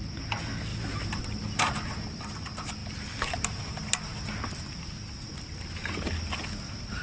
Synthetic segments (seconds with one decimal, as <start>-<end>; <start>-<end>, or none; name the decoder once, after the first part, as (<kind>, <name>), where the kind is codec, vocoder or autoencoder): none